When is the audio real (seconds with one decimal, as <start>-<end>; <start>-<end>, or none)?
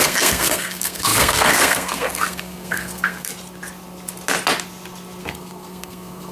3.3-5.2